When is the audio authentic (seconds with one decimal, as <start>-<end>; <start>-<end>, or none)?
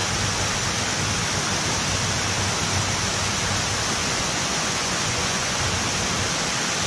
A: 0.0-4.0; 5.6-6.9